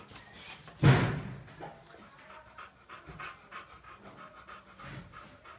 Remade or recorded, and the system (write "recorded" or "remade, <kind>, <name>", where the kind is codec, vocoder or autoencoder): recorded